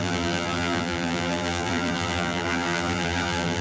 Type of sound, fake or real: fake